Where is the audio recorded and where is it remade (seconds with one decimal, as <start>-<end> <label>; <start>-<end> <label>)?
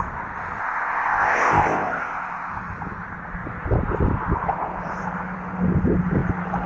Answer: 0.0-0.6 recorded; 0.6-2.5 remade; 2.5-6.7 recorded